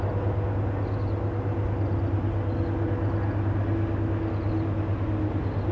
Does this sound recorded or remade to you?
recorded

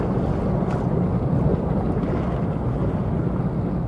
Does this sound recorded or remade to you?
recorded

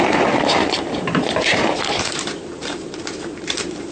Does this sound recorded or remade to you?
remade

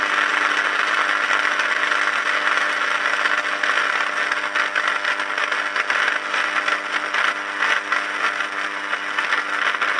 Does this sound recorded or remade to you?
recorded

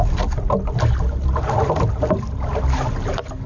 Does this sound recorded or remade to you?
recorded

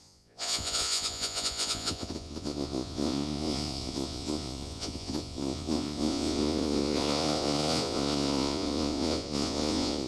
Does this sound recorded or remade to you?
remade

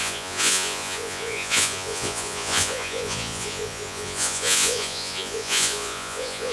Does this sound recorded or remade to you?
remade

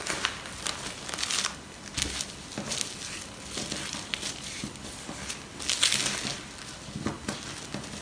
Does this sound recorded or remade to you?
recorded